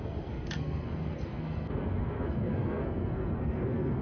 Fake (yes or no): yes